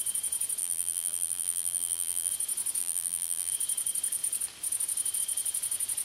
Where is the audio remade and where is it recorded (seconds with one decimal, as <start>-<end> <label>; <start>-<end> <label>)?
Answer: 0.0-0.6 recorded; 0.6-2.3 remade; 2.3-2.8 recorded; 2.8-3.5 remade; 3.5-6.0 recorded